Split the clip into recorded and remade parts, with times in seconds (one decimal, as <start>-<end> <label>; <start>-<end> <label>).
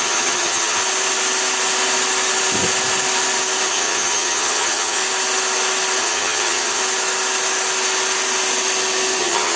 0.0-0.8 remade; 0.8-3.7 recorded; 3.7-5.0 remade; 5.0-6.0 recorded; 6.0-6.8 remade; 6.8-9.2 recorded; 9.2-9.6 remade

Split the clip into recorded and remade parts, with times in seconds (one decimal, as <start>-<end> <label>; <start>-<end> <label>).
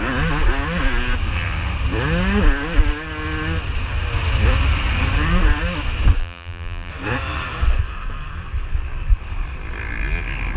0.0-6.2 recorded; 6.2-6.9 remade; 6.9-10.6 recorded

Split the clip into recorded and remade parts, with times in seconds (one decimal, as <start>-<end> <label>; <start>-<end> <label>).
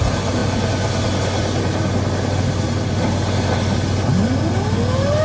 0.0-5.2 recorded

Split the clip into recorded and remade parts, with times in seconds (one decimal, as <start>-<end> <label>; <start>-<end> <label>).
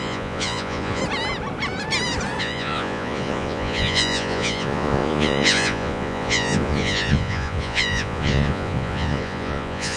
0.0-1.0 remade; 1.0-2.4 recorded; 2.4-10.0 remade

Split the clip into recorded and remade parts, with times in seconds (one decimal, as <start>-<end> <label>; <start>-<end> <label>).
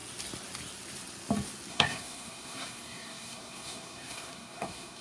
0.0-1.7 recorded; 1.7-5.0 remade